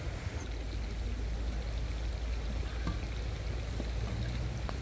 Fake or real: real